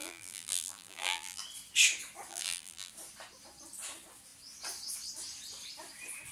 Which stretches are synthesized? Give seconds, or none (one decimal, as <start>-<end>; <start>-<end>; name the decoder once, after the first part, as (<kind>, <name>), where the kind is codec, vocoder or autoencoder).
0.0-1.4 (vocoder, BigVGAN v2); 2.3-2.9

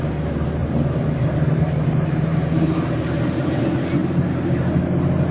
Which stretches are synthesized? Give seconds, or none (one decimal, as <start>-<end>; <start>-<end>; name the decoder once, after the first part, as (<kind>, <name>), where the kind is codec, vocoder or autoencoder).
0.6-3.6 (vocoder, BigVGAN v2); 4.0-4.8

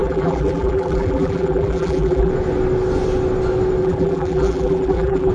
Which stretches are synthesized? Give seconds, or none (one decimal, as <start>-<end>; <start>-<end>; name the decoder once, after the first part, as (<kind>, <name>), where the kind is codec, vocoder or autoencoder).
0.0-2.3 (vocoder, BigVGAN v2); 3.8-5.3

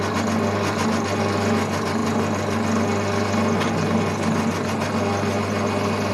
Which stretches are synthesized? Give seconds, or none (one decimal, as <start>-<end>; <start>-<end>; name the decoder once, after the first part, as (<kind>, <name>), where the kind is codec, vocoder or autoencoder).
none

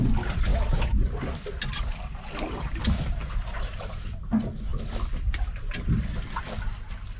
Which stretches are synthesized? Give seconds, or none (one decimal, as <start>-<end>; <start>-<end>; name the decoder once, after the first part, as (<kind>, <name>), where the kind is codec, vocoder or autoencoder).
3.2-4.3 (vocoder, BigVGAN v2)

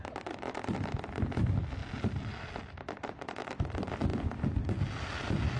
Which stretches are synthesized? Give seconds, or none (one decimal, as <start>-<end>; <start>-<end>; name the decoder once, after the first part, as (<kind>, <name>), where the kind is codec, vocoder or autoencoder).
none

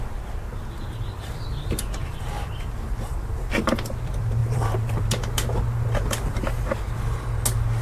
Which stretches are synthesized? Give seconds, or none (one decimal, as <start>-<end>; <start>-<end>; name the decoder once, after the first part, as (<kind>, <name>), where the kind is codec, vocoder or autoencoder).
2.0-3.8 (vocoder, BigVGAN v2); 4.4-6.4

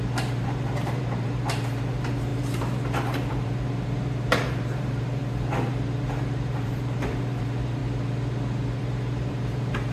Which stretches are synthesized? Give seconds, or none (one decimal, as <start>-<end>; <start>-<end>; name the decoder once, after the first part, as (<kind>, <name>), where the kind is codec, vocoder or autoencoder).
0.0-5.2 (vocoder, BigVGAN v2); 5.7-7.8; 8.8-9.9